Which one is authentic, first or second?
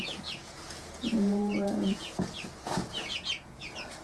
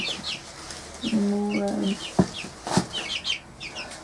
second